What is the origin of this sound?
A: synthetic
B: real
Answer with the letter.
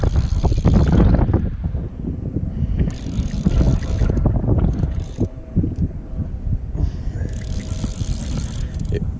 B